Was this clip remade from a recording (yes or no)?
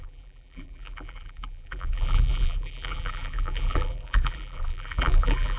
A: yes